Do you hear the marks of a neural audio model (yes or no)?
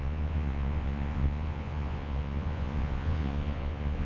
yes